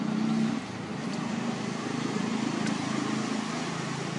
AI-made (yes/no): no